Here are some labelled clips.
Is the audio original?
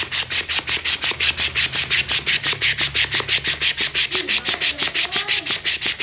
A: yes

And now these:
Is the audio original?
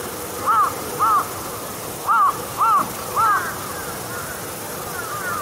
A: yes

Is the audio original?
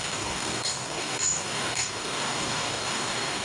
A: no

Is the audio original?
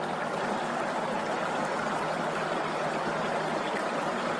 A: yes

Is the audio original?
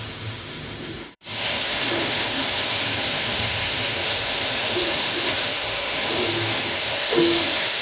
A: no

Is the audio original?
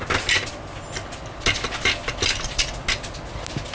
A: yes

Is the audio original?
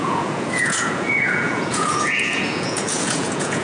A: no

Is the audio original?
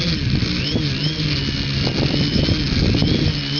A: yes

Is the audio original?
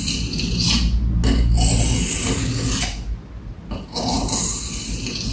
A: yes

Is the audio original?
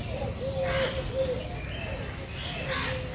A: yes